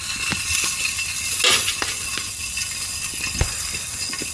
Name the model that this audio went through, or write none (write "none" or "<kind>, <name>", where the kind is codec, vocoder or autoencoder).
none